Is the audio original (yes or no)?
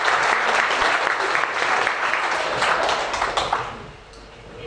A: yes